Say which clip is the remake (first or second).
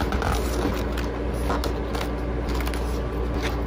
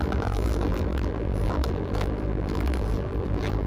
second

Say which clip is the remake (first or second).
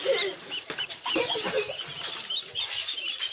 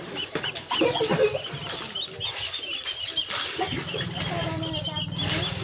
first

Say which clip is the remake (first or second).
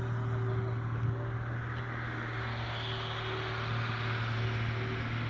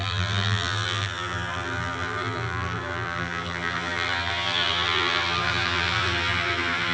second